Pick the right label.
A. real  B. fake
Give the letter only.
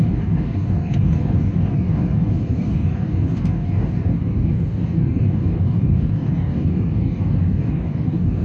B